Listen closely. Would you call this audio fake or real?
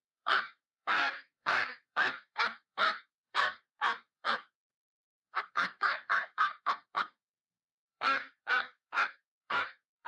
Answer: fake